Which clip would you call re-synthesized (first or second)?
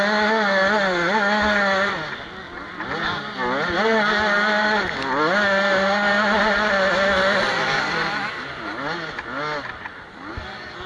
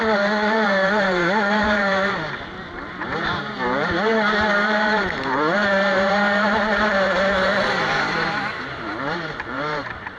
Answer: second